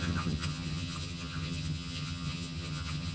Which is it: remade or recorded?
remade